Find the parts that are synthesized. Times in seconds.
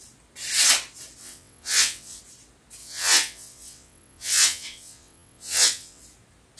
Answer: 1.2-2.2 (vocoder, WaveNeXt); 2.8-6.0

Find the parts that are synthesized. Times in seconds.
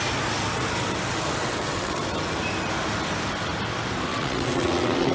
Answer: 1.4-2.0 (vocoder, WaveNeXt); 4.1-5.1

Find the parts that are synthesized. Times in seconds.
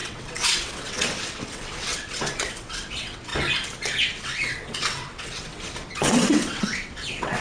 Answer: 0.0-3.3 (vocoder, WaveNeXt); 4.0-7.4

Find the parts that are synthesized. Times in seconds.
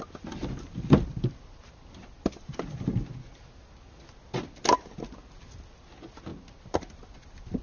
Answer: none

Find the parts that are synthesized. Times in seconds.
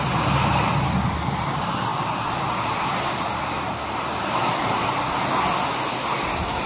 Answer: none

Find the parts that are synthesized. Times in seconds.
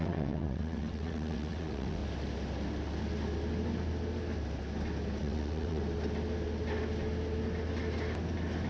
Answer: 0.0-2.0 (vocoder, WaveNeXt); 5.2-5.8